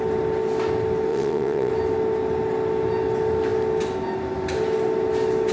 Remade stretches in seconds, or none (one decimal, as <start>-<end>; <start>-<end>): 1.1-1.7